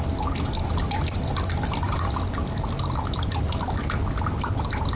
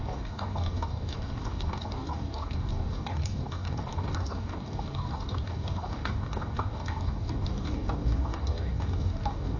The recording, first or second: first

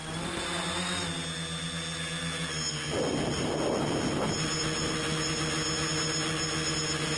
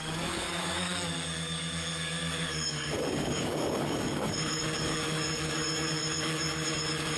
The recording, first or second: first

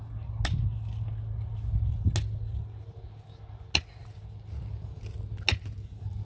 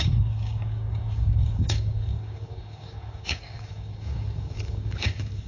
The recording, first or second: first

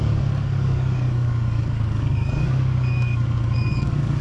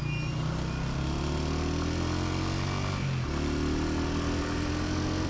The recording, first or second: second